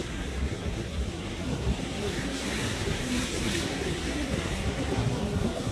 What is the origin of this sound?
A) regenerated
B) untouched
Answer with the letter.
A